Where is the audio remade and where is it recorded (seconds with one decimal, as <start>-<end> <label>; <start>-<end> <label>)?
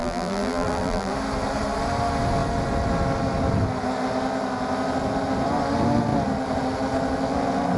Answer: 0.0-1.1 remade; 1.1-7.8 recorded